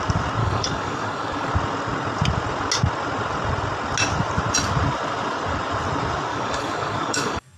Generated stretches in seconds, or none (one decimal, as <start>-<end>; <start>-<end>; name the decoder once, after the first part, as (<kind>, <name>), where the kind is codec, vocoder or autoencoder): 0.4-1.5 (codec, DAC); 6.3-7.6